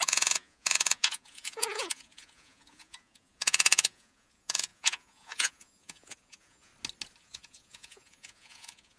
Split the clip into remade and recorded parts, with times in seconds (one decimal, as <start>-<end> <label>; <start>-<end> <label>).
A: 0.0-6.7 remade; 6.7-7.2 recorded; 7.2-9.0 remade